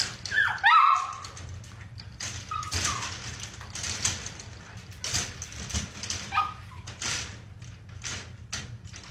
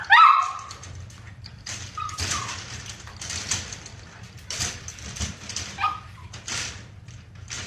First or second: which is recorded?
first